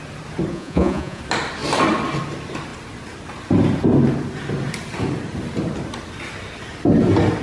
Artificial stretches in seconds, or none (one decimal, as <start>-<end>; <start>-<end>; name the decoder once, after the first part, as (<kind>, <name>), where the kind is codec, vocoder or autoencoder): 0.5-1.2 (vocoder, Vocos)

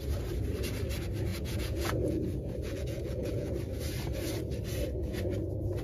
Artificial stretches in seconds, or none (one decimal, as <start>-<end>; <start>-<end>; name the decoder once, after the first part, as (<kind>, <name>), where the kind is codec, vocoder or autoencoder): 1.3-3.5 (vocoder, Vocos)

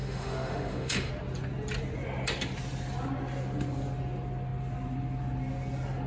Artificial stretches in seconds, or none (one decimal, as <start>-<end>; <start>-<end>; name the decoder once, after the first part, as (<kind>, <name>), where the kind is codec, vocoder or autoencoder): 0.0-1.1 (autoencoder, DAC-VAE)